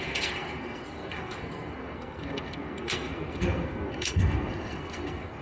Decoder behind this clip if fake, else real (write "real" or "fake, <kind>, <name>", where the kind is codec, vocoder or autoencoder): fake, codec, SNAC